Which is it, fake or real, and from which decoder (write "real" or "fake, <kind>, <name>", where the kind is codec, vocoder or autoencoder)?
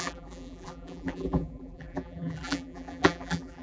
fake, vocoder, BigVGAN v2